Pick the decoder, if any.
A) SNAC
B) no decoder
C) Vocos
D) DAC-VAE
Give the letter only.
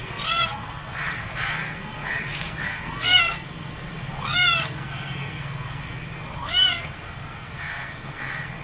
A